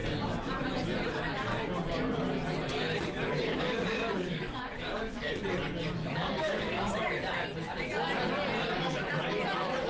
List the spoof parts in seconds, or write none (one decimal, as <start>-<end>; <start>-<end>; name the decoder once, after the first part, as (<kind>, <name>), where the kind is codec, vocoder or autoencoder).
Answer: 3.5-5.3 (codec, DAC); 6.0-6.9